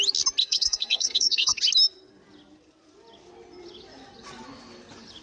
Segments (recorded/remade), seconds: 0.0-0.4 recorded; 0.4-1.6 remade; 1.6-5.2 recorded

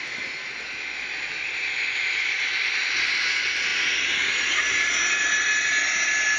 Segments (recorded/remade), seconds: 0.0-6.4 recorded